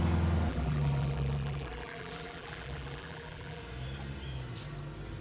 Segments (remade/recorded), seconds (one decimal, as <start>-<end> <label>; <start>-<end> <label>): 0.0-0.5 recorded; 0.5-3.6 remade; 3.6-5.2 recorded